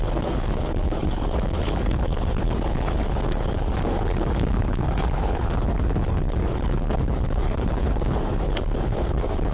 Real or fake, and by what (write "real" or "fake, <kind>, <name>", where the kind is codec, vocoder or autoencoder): fake, codec, HILCodec